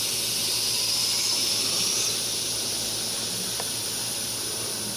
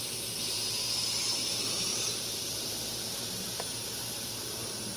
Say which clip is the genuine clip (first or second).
first